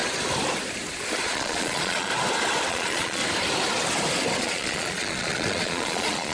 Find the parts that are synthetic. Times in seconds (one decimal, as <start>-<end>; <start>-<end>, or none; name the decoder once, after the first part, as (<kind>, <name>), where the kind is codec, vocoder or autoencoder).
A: 1.2-2.1 (vocoder, Vocos); 2.7-3.2; 4.4-6.3